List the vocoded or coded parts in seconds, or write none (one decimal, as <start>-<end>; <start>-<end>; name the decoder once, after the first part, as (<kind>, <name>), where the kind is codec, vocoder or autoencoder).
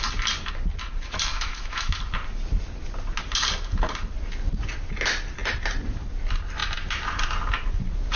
1.3-2.0 (autoencoder, DAC-VAE)